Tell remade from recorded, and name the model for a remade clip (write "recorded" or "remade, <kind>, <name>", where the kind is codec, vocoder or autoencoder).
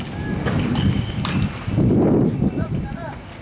recorded